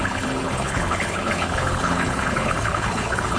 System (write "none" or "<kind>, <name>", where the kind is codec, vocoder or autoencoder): codec, HILCodec